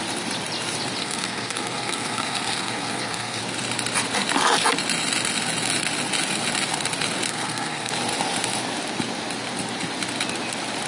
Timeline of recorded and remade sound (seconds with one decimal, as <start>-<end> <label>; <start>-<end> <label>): 0.0-1.0 recorded; 1.0-3.4 remade; 3.4-7.3 recorded; 7.3-7.9 remade; 7.9-10.9 recorded